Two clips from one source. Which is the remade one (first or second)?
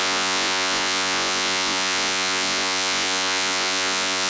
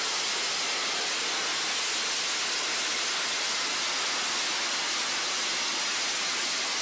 first